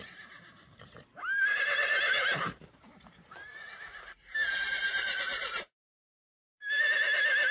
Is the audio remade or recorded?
remade